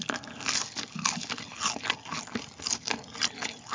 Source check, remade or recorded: recorded